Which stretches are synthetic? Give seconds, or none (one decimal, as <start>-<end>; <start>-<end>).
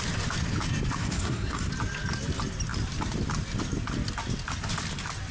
1.0-1.7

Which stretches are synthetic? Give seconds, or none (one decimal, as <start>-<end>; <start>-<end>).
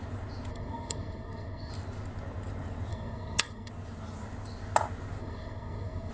0.5-1.7; 2.9-3.7; 5.2-6.1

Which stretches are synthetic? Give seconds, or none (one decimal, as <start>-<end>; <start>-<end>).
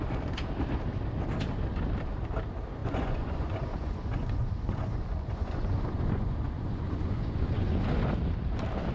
2.8-7.8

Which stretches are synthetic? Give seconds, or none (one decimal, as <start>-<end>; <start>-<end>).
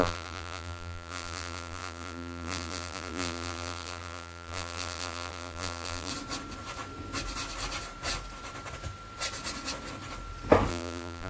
0.0-6.1; 10.7-11.3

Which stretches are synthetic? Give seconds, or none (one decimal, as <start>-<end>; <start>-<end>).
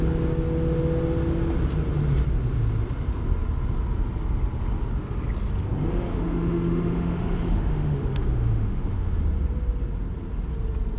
6.1-9.2